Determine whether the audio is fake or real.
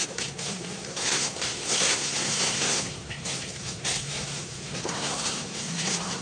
fake